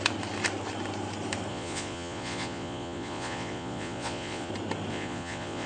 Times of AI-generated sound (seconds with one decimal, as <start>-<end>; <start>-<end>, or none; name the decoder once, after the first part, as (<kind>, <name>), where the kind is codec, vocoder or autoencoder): 1.5-4.5 (vocoder, Vocos); 4.9-5.7